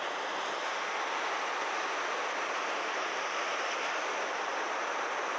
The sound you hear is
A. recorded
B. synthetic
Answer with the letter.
A